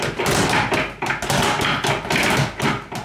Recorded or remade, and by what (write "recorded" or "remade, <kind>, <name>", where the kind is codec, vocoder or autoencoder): recorded